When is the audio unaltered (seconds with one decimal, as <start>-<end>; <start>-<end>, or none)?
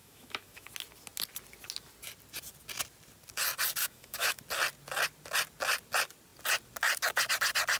0.7-3.8; 4.4-7.8